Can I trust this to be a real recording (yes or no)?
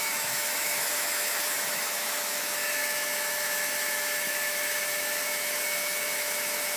no